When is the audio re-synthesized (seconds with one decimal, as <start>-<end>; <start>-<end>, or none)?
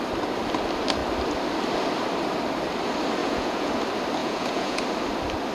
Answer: 3.2-3.7; 4.2-4.8